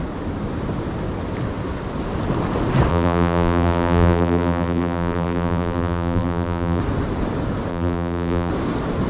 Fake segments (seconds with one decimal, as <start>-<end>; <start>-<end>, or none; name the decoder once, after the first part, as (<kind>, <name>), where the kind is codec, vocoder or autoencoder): 2.9-6.8 (vocoder, BigVGAN v2); 7.7-8.5